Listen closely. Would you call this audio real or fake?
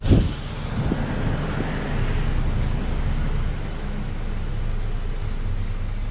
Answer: real